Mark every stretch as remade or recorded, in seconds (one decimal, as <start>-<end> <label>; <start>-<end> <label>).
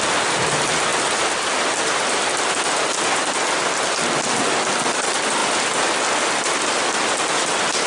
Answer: 0.0-7.9 recorded